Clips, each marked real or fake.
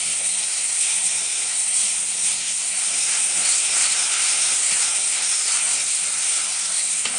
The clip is fake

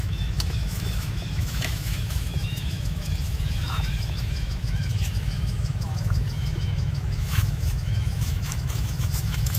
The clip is fake